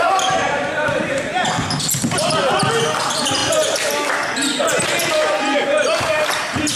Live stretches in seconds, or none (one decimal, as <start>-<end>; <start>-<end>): 1.3-3.0; 3.4-4.6